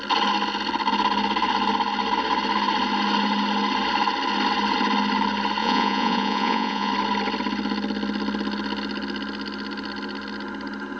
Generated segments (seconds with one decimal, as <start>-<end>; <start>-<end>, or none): 5.6-6.9

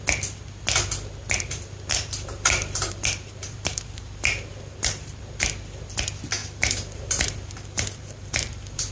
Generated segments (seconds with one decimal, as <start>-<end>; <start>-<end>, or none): 1.9-5.2; 6.4-8.9

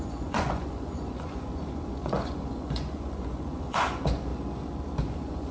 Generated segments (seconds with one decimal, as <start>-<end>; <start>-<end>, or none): 0.0-4.3; 5.0-5.5